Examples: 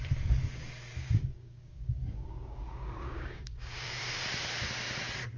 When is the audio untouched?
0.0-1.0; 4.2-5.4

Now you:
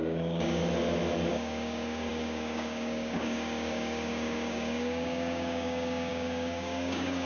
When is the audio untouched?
0.6-1.3

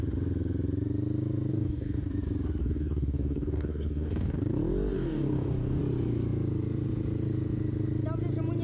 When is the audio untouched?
0.0-1.5; 2.1-2.6; 4.4-4.9; 5.8-8.6

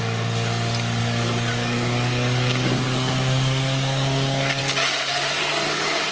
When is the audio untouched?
0.0-1.0; 4.6-5.1

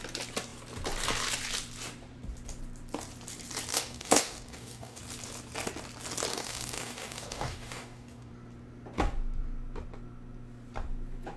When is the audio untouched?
0.0-3.7; 5.0-6.3; 8.3-11.4